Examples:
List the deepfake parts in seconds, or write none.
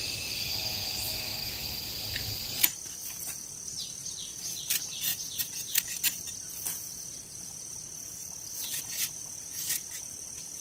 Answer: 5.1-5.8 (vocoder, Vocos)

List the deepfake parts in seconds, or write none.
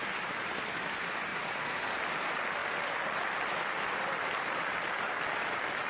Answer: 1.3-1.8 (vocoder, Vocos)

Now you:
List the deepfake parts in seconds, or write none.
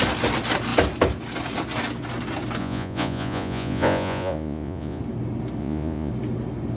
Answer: 2.6-5.0 (vocoder, Vocos); 5.6-6.1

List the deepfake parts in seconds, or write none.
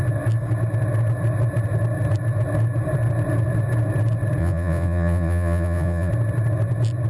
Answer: 4.4-6.1 (vocoder, Vocos)